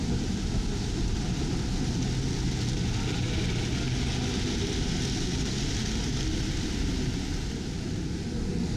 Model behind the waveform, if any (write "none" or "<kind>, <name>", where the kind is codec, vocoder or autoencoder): none